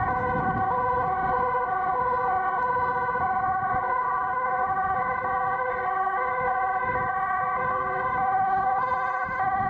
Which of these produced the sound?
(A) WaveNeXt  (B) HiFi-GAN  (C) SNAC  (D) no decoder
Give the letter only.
D